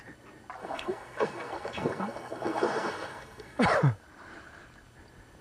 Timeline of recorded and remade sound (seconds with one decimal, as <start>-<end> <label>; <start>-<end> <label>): 0.0-0.6 recorded; 0.6-3.6 remade; 3.6-5.4 recorded